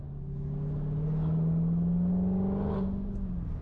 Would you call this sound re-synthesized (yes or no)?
no